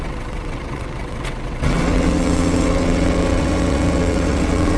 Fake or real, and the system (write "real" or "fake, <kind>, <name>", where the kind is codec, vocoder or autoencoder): fake, vocoder, WaveNeXt